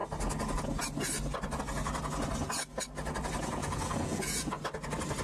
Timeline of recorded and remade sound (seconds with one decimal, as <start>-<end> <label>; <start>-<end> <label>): 0.0-3.6 recorded; 3.6-4.6 remade; 4.6-5.2 recorded

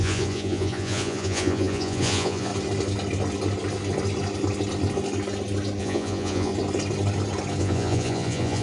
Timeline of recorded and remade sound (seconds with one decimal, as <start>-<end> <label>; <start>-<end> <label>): 0.0-2.5 remade; 2.5-5.8 recorded; 5.8-6.5 remade; 6.5-7.6 recorded; 7.6-8.6 remade

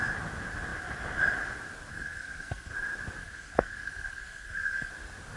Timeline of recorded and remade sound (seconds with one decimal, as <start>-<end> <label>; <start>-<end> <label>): 0.0-1.9 recorded; 1.9-2.7 remade; 2.7-3.2 recorded; 3.2-4.9 remade; 4.9-5.4 recorded